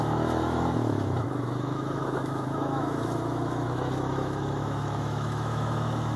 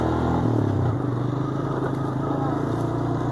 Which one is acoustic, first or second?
second